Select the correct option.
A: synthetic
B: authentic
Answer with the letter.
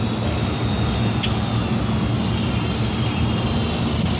B